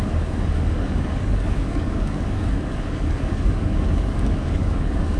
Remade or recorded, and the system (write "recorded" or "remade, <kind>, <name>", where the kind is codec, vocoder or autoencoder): remade, codec, DAC